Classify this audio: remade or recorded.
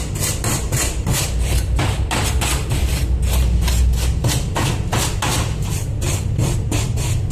recorded